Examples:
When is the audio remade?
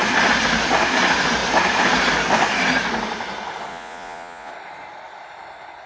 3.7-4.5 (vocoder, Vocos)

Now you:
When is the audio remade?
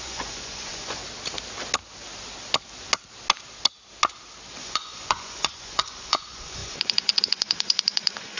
0.0-1.0 (vocoder, Vocos); 4.6-8.4